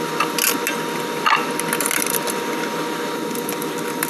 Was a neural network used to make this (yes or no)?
no